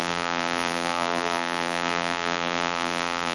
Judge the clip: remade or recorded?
remade